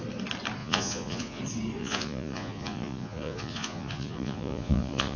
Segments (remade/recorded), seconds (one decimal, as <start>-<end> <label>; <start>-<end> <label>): 0.0-0.6 recorded; 0.6-1.4 remade; 1.4-1.8 recorded; 1.8-5.2 remade

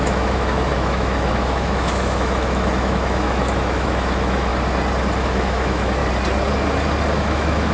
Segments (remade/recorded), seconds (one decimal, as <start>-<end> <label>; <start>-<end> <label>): 0.0-4.5 remade; 4.5-5.2 recorded; 5.2-6.0 remade; 6.0-7.1 recorded; 7.1-7.7 remade

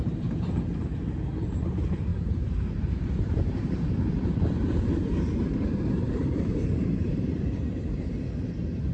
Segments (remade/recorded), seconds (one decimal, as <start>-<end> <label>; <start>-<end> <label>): 0.0-8.9 remade